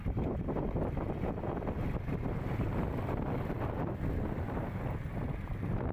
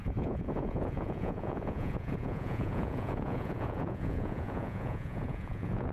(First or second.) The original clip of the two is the first